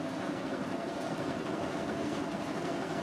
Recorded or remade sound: remade